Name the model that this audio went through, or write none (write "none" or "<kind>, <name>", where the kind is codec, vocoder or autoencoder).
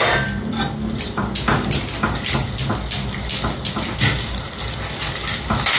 none